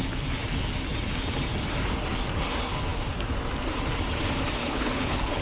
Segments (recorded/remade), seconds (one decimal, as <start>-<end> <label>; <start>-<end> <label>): 0.0-4.6 recorded; 4.6-5.4 remade